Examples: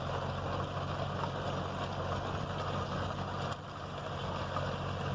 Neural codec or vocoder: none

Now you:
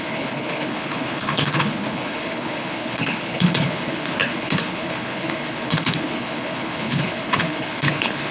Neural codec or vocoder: codec, HILCodec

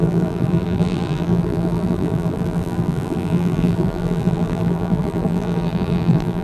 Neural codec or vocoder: vocoder, BigVGAN v2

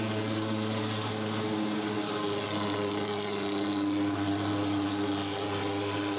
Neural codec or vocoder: none